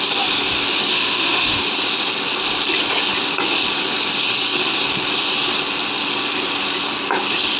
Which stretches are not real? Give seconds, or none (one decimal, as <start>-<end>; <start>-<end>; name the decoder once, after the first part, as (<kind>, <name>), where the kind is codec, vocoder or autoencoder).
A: 0.9-1.6 (autoencoder, DAC-VAE)